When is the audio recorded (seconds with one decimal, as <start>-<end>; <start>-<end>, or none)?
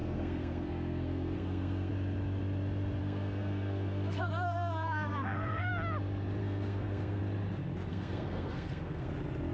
1.9-3.0; 5.7-6.4; 7.2-7.9; 9.1-9.5